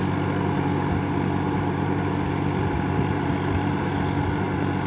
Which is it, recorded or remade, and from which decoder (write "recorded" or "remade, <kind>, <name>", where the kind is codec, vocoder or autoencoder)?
recorded